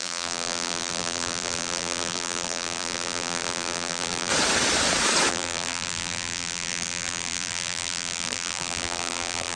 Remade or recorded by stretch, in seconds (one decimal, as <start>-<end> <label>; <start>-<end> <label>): 0.0-4.3 remade; 4.3-5.3 recorded; 5.3-9.6 remade